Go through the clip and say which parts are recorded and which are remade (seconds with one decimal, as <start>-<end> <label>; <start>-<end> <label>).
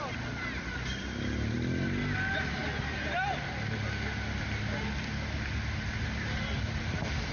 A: 0.0-7.3 recorded